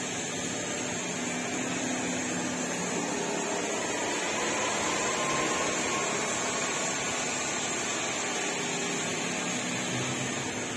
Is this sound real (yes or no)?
yes